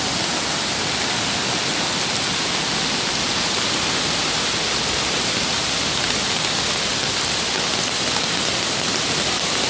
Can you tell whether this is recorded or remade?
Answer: recorded